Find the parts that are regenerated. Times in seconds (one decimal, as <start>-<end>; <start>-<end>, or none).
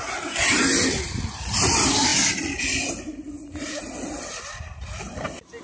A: none